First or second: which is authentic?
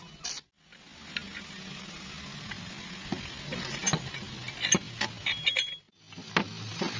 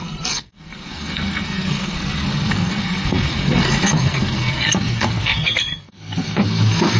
first